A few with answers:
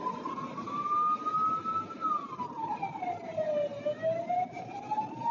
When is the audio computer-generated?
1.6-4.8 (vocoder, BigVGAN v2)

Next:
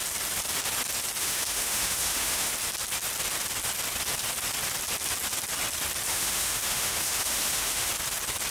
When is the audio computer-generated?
1.2-2.5 (autoencoder, DAC-VAE); 6.1-7.9

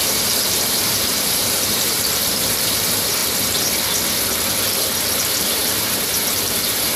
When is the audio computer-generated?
0.0-3.2 (vocoder, BigVGAN v2); 5.1-7.0

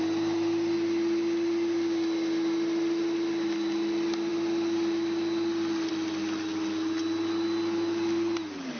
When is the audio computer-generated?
none